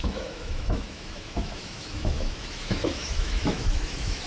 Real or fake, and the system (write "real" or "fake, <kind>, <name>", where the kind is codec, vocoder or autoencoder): fake, autoencoder, DAC-VAE